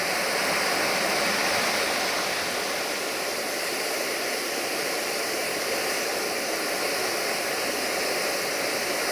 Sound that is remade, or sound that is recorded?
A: recorded